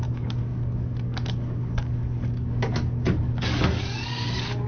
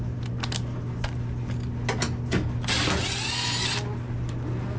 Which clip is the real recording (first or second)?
second